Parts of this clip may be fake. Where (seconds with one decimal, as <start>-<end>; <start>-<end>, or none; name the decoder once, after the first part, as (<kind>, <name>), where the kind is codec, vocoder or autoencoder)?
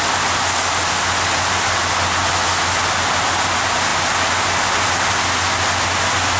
none